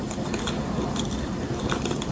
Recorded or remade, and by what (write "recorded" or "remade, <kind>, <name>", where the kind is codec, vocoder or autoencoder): recorded